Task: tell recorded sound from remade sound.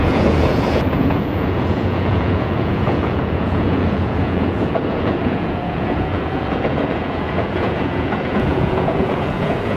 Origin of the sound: remade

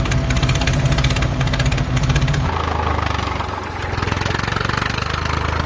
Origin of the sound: recorded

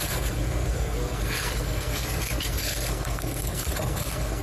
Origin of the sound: remade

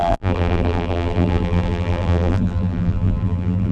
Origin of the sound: remade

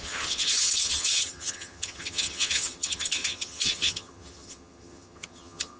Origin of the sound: remade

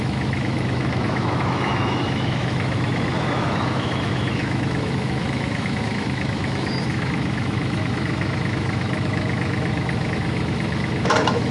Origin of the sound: remade